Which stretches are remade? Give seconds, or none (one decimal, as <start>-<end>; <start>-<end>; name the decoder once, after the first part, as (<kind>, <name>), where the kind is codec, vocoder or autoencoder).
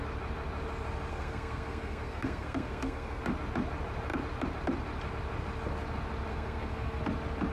1.1-3.2 (codec, SNAC); 6.3-7.0